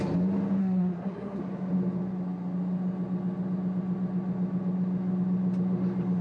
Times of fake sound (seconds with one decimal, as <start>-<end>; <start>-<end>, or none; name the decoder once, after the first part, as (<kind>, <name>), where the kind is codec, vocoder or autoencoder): 0.6-1.4 (codec, SNAC)